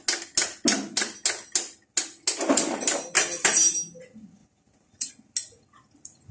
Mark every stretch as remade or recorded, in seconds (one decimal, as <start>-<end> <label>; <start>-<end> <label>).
0.0-4.4 recorded; 4.4-5.1 remade; 5.1-6.3 recorded